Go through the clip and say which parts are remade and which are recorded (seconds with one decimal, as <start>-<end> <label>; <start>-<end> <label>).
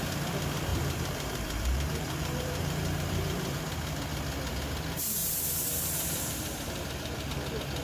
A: 0.0-0.7 recorded; 0.7-3.6 remade; 3.6-5.2 recorded; 5.2-7.3 remade; 7.3-7.8 recorded